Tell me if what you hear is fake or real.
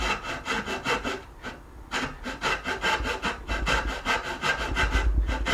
real